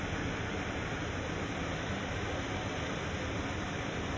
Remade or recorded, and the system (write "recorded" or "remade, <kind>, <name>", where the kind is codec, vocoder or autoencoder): recorded